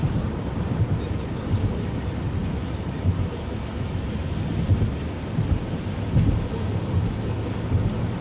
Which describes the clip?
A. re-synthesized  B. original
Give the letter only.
B